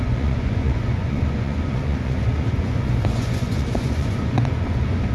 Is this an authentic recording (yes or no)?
no